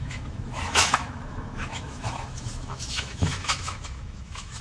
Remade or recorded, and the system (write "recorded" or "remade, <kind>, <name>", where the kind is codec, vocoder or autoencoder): remade, autoencoder, DAC-VAE